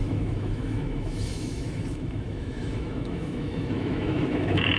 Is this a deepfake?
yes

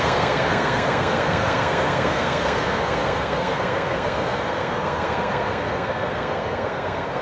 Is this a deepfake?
yes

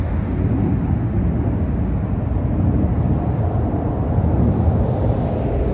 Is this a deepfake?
no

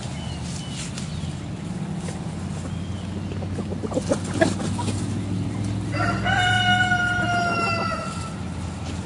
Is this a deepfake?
no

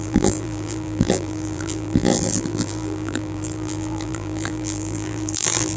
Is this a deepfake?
yes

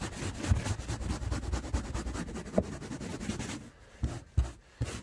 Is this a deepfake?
no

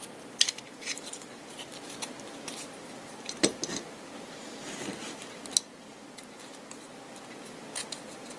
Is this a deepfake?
no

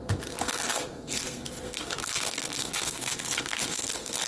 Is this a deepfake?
yes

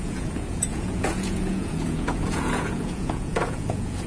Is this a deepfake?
yes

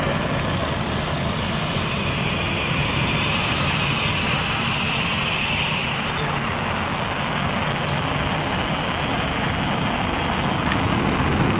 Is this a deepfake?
no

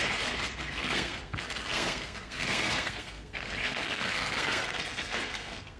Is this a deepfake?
yes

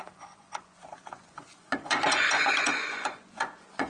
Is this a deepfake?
yes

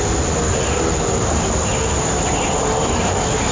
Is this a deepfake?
no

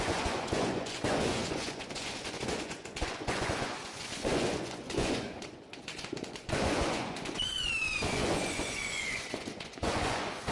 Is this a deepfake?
yes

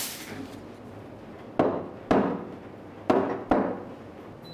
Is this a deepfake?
no